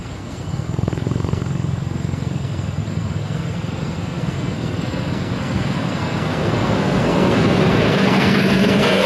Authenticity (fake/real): fake